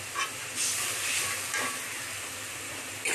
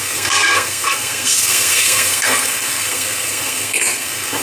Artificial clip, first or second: second